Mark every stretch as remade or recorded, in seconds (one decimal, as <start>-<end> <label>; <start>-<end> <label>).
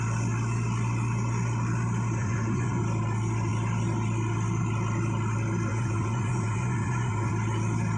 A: 0.0-2.2 recorded; 2.2-2.8 remade; 2.8-5.7 recorded; 5.7-7.3 remade; 7.3-8.0 recorded